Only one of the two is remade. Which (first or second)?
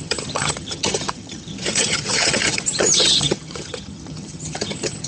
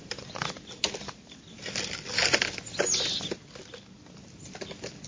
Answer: first